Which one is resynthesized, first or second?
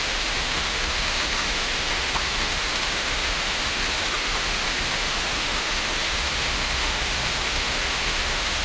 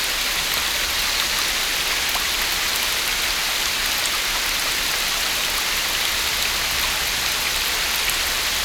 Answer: first